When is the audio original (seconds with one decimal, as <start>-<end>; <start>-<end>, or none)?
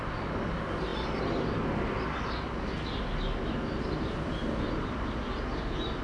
0.0-6.0